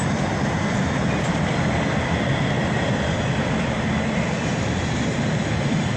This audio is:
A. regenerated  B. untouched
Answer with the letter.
B